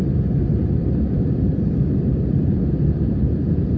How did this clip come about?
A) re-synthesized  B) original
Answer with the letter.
B